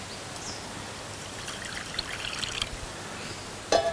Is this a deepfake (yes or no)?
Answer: no